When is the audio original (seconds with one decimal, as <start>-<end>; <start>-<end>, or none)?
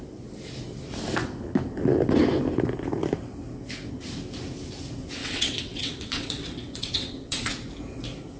0.0-5.2; 7.5-8.4